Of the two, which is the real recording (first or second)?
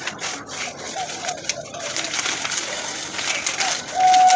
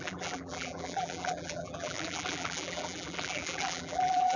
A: first